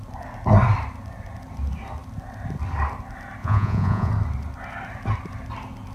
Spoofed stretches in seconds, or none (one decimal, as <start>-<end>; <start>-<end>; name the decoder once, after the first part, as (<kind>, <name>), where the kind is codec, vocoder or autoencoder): 3.4-4.1 (vocoder, Vocos)